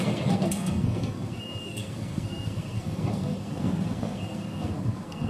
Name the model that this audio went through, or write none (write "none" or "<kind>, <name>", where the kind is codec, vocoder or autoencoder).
codec, SNAC